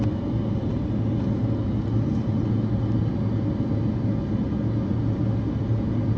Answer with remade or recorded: recorded